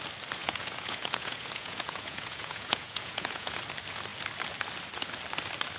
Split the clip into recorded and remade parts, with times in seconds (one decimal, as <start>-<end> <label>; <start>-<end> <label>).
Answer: 0.0-0.4 recorded; 0.4-3.6 remade; 3.6-5.8 recorded